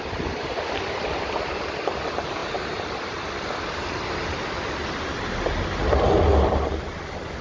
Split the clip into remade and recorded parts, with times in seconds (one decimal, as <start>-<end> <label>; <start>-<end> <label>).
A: 0.0-2.4 remade; 2.4-6.8 recorded; 6.8-7.4 remade